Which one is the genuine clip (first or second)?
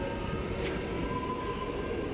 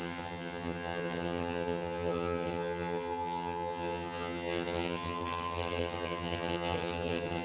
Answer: first